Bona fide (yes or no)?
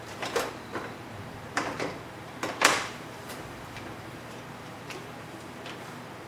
no